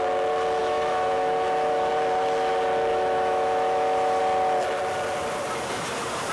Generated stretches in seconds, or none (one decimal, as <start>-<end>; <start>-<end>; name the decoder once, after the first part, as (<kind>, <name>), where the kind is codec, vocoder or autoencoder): 0.6-1.9 (autoencoder, DAC-VAE); 2.9-4.2